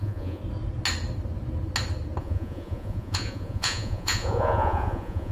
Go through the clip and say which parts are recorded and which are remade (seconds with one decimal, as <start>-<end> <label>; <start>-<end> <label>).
0.0-0.4 remade; 0.4-2.2 recorded; 2.2-5.3 remade